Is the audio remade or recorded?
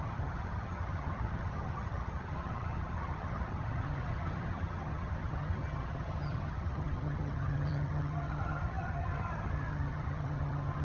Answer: remade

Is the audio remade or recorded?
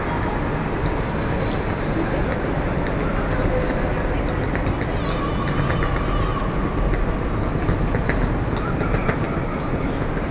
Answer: recorded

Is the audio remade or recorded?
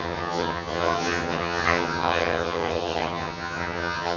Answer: remade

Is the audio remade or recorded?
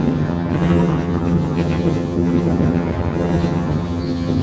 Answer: remade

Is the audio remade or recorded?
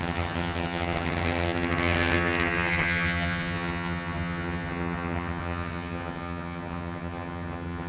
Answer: remade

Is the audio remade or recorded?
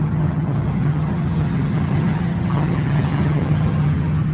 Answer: remade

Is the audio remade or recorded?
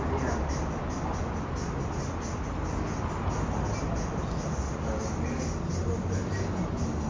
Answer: recorded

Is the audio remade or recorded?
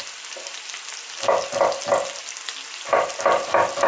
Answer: recorded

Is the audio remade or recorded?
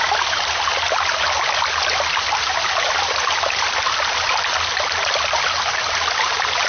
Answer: recorded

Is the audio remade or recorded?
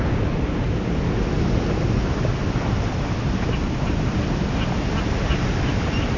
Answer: recorded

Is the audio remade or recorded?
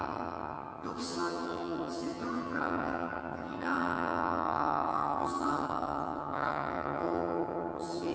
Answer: remade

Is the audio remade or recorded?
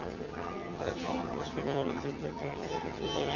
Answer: remade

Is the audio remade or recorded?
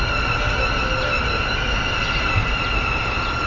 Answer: recorded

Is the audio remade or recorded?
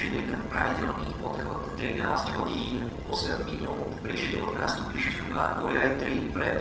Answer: remade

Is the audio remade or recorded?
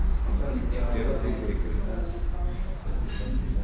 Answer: recorded